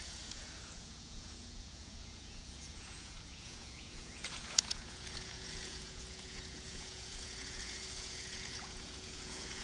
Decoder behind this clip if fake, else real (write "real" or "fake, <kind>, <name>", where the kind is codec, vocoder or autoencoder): fake, vocoder, Vocos